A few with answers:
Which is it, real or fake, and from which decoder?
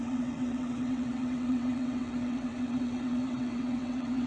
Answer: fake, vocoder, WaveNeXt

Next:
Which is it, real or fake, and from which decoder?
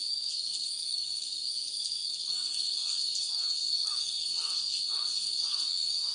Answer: fake, codec, SNAC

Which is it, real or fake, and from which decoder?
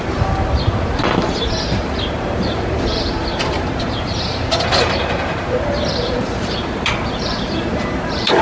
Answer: fake, vocoder, BigVGAN v2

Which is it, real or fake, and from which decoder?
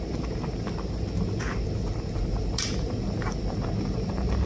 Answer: real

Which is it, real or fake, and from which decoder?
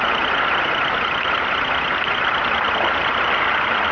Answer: real